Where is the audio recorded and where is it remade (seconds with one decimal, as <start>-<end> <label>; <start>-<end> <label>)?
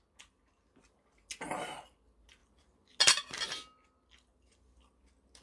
0.0-5.4 recorded